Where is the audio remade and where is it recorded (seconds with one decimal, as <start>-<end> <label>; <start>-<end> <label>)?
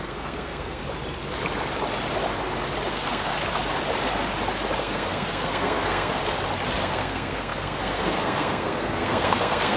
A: 0.0-0.8 remade; 0.8-2.9 recorded; 2.9-3.3 remade; 3.3-4.8 recorded; 4.8-6.2 remade; 6.2-6.8 recorded; 6.8-9.8 remade